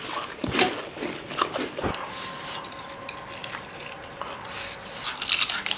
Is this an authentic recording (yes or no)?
no